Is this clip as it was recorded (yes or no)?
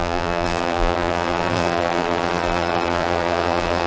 no